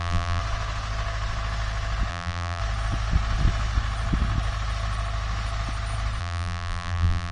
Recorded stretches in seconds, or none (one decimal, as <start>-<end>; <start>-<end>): 0.4-2.1; 2.6-6.2